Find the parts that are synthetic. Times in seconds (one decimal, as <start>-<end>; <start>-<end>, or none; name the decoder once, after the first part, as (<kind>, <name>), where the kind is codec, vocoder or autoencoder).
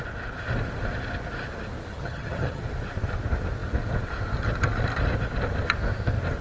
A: 1.9-2.6 (vocoder, HiFi-GAN)